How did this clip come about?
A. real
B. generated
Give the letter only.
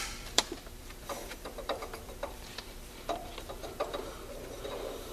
B